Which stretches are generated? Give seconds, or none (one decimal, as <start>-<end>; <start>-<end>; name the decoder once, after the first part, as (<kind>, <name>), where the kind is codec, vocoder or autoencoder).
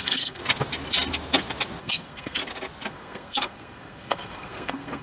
0.0-0.4 (codec, SNAC); 1.8-2.4; 2.9-5.0